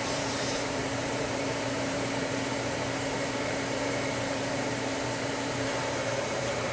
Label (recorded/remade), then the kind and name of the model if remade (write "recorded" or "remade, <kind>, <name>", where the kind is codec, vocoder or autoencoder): remade, vocoder, BigVGAN v2